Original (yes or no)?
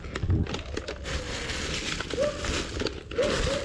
yes